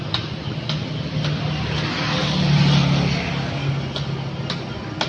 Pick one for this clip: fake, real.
real